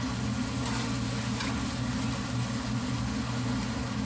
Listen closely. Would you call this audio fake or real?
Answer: real